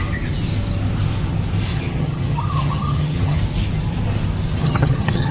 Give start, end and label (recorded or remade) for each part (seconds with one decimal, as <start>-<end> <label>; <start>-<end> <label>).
0.0-1.7 recorded; 1.7-3.4 remade; 3.4-4.6 recorded; 4.6-5.3 remade